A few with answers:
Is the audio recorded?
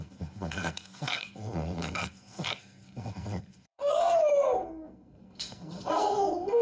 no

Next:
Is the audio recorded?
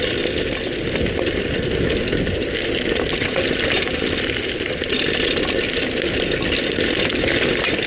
yes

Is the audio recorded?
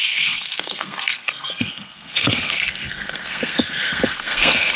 no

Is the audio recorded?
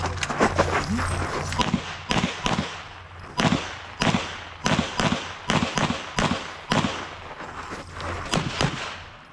yes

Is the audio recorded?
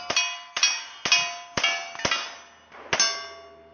yes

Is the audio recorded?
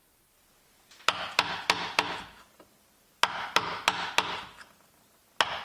yes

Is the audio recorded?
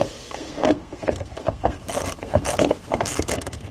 no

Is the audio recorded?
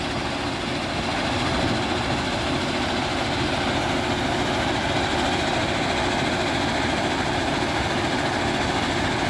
yes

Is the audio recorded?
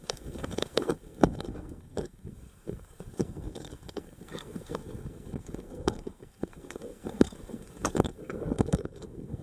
no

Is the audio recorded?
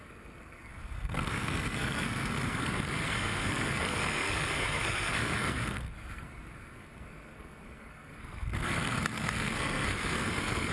no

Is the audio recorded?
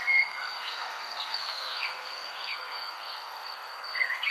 no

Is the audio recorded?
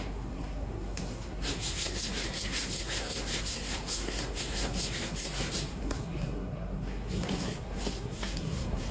no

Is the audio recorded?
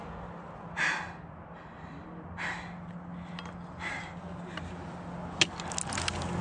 yes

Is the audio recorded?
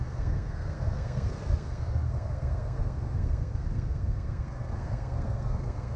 no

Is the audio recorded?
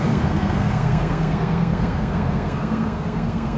no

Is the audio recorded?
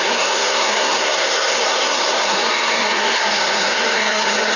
no